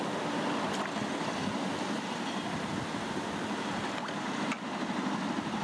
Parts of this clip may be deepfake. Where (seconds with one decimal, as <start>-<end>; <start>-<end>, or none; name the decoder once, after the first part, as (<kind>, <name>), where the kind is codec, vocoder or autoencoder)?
none